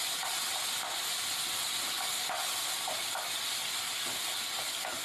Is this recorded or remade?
recorded